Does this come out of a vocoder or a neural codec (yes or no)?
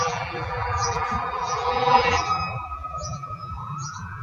yes